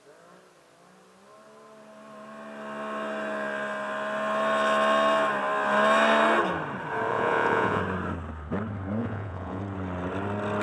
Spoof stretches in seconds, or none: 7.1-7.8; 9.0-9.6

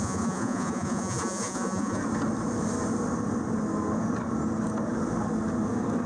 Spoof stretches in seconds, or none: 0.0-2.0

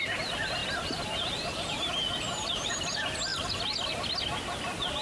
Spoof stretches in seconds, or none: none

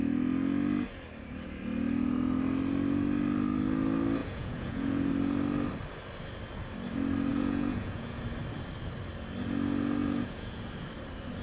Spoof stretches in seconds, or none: 4.2-5.1; 7.3-8.2; 10.0-10.6

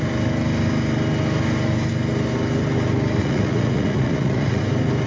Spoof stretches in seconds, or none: 3.2-4.6

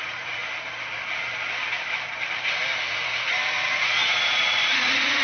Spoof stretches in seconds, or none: 0.0-0.4; 3.5-5.2

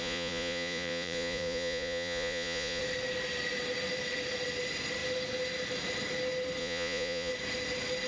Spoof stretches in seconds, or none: 0.0-2.8; 6.6-7.3